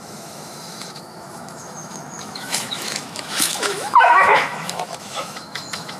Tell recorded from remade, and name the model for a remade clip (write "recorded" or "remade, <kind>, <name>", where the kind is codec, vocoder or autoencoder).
remade, autoencoder, DAC-VAE